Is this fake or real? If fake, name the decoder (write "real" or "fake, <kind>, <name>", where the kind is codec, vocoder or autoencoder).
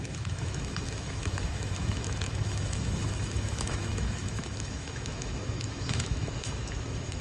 fake, autoencoder, DAC-VAE